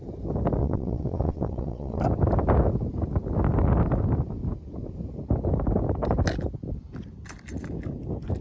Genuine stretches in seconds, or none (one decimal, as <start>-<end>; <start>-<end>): 0.0-0.6; 2.0-8.4